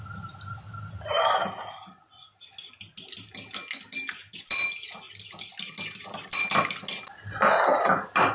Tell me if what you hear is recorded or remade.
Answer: recorded